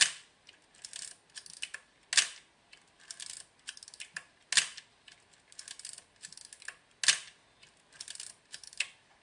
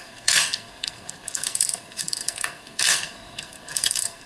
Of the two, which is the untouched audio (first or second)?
first